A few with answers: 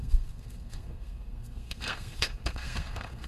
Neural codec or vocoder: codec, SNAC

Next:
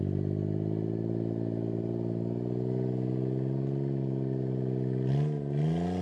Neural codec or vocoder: none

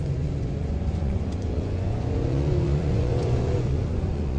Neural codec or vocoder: vocoder, Vocos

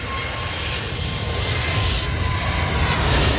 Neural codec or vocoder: none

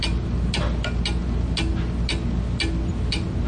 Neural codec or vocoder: none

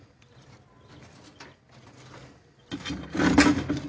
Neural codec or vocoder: none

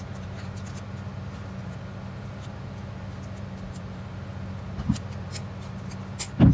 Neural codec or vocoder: none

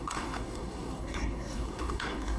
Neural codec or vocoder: codec, SNAC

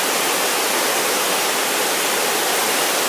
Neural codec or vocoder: none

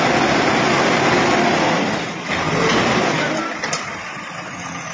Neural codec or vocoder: none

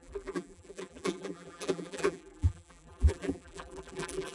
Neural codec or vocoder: vocoder, BigVGAN v2